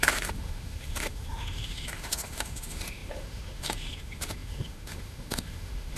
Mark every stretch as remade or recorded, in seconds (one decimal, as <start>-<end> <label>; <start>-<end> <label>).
0.0-6.0 remade